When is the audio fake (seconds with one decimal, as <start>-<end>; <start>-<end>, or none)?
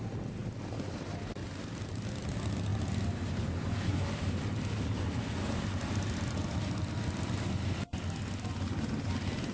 none